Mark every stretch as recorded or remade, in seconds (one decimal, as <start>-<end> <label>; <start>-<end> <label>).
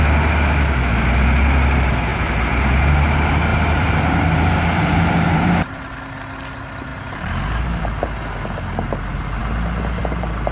0.0-3.5 recorded; 3.5-5.8 remade; 5.8-6.9 recorded; 6.9-8.0 remade; 8.0-10.5 recorded